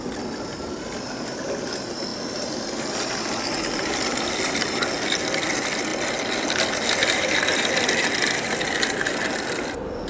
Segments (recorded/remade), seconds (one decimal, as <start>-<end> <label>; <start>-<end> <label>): 0.0-10.1 recorded